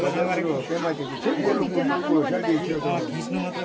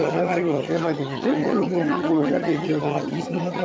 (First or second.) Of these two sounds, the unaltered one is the first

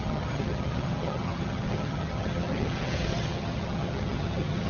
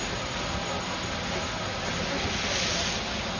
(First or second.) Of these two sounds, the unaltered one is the second